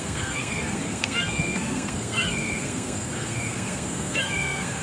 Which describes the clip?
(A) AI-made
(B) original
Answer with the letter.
A